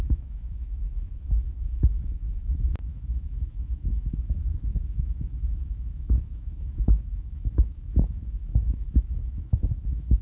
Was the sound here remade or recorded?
remade